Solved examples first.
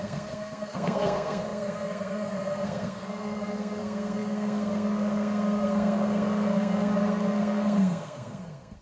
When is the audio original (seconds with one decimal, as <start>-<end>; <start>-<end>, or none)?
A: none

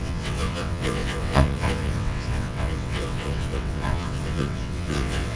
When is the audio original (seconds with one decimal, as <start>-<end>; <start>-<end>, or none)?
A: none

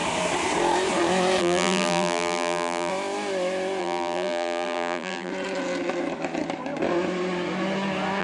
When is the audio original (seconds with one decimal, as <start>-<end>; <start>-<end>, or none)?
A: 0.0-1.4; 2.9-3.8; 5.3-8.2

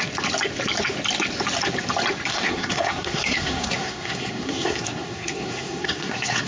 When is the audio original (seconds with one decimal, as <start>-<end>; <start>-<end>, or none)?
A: 0.0-2.3

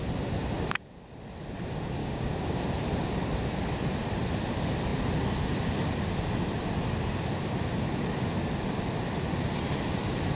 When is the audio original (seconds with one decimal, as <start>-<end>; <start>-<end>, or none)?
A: 0.0-2.0; 2.6-10.4

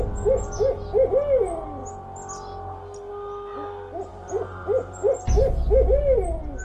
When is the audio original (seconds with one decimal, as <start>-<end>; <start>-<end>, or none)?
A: 0.0-4.1; 5.1-6.6

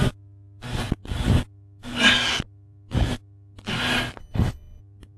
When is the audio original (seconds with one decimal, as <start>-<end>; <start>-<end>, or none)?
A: 0.0-4.2; 4.8-5.2